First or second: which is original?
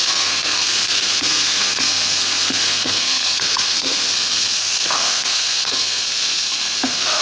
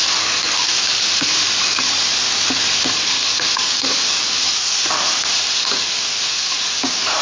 second